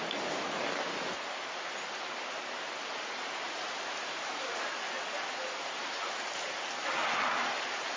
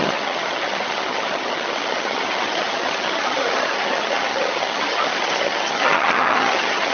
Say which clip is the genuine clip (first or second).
first